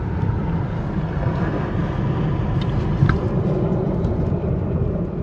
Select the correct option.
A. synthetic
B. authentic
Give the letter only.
B